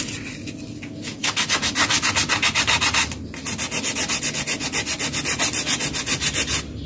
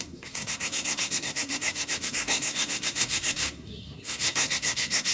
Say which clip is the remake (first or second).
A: second